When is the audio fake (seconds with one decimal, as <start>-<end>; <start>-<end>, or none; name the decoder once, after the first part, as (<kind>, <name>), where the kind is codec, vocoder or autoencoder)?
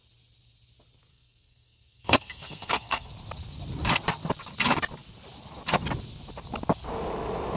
1.1-3.1 (codec, SNAC)